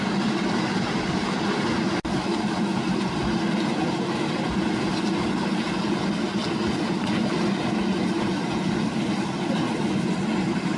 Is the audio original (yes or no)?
yes